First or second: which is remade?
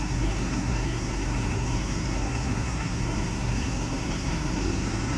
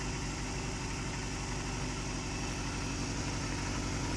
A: first